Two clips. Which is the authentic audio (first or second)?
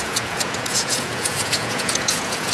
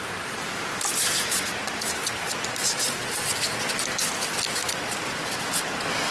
second